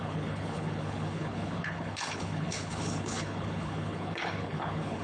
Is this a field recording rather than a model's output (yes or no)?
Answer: no